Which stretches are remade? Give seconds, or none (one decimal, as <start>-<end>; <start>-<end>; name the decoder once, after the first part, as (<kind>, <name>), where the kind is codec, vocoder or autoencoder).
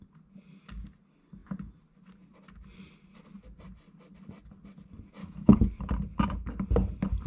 5.2-5.7 (autoencoder, DAC-VAE)